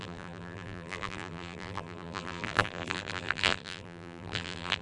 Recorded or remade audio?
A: remade